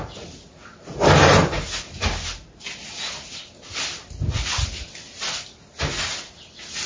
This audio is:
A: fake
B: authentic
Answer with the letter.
B